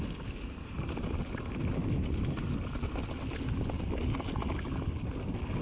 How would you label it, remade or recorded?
recorded